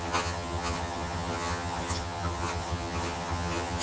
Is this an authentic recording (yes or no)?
no